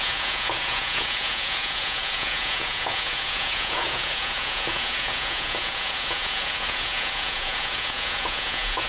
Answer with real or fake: fake